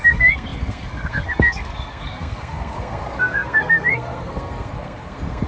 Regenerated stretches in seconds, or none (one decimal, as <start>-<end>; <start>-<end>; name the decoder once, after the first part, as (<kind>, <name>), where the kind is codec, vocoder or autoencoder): 0.0-5.5 (codec, SNAC)